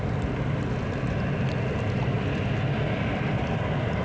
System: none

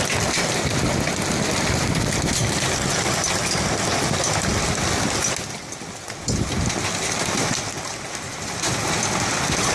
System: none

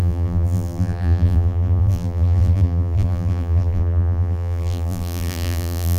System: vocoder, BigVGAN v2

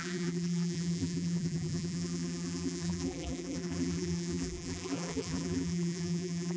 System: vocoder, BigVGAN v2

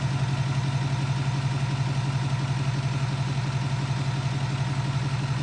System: none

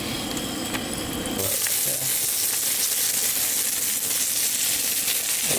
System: none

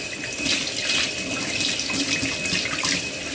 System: none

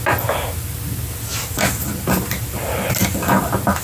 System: none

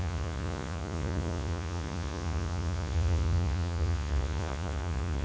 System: vocoder, Vocos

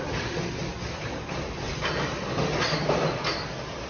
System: none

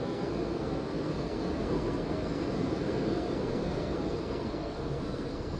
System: codec, SNAC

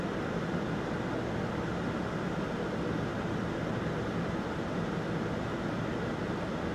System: none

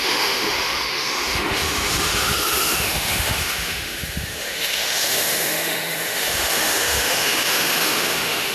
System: autoencoder, DAC-VAE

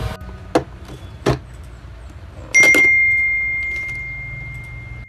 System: none